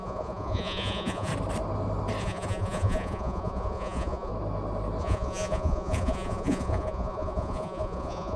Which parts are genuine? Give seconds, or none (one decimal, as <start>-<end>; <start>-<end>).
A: 1.3-2.2; 4.3-5.0